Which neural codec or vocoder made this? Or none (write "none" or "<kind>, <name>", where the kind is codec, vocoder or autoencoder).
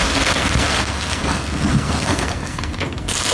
codec, SNAC